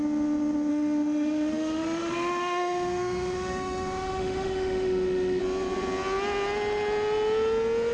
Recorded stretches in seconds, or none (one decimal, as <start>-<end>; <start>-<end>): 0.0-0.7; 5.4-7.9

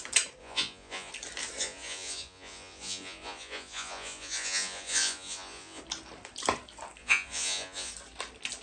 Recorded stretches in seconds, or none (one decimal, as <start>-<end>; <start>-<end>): 0.0-0.4; 1.1-1.6; 5.8-7.0; 7.9-8.6

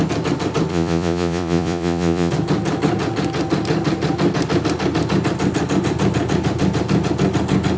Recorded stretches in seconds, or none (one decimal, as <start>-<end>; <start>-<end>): 0.0-0.7; 2.3-7.8

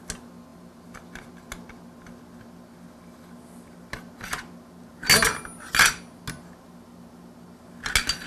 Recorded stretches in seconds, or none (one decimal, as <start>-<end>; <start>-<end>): 0.0-8.3